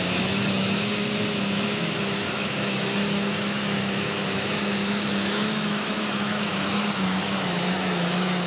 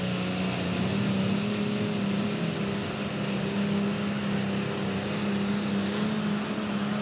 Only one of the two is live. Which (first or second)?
second